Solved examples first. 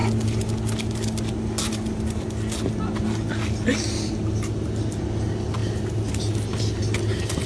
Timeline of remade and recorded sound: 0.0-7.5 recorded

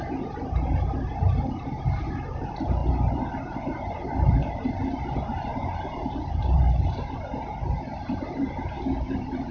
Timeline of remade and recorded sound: 0.0-2.8 remade; 2.8-3.3 recorded; 3.3-9.5 remade

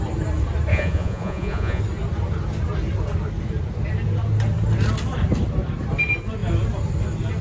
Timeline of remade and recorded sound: 0.0-0.7 recorded; 0.7-1.8 remade; 1.8-7.4 recorded

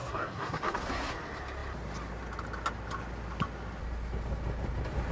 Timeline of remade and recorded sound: 0.0-1.1 remade; 1.1-5.1 recorded

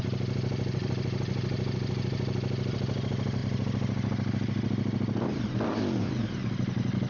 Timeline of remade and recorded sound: 0.0-7.1 recorded

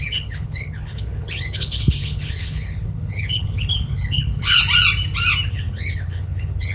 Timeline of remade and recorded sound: 0.0-4.6 remade; 4.6-5.5 recorded; 5.5-6.7 remade